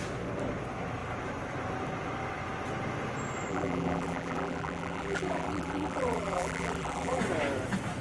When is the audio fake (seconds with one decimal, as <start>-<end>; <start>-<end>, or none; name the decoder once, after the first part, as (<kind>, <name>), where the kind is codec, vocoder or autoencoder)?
3.5-7.2 (vocoder, BigVGAN v2)